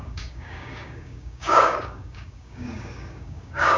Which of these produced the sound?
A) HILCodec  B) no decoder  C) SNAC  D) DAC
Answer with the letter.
D